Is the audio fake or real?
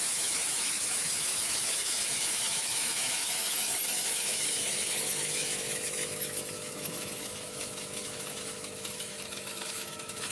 fake